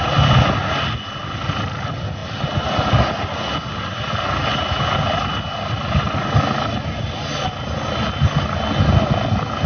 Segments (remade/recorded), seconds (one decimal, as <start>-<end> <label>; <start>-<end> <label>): 0.0-9.7 recorded